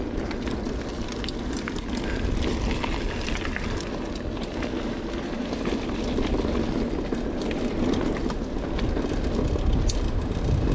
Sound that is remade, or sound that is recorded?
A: recorded